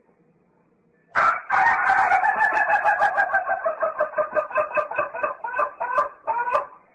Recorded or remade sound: remade